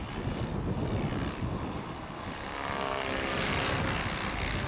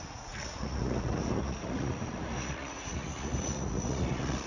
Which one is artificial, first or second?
second